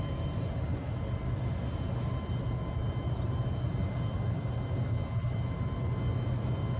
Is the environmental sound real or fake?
real